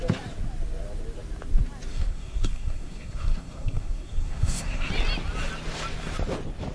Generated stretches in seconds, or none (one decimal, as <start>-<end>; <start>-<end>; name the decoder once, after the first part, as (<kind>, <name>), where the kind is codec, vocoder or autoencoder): 1.9-4.9 (codec, SNAC)